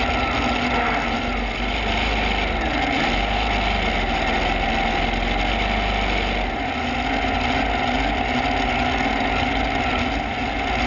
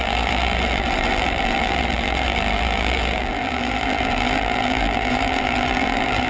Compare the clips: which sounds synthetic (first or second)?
second